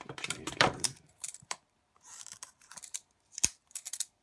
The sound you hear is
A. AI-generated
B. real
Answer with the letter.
A